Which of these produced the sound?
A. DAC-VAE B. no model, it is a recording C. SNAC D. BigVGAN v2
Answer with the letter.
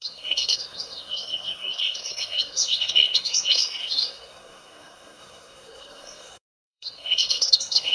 C